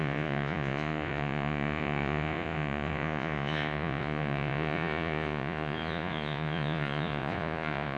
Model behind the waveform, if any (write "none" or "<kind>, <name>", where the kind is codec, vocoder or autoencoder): vocoder, Vocos